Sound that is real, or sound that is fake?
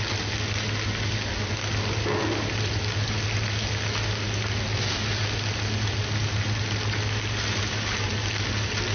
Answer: real